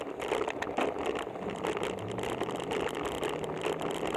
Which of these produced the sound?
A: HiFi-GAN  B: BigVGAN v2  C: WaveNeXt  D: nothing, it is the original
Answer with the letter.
D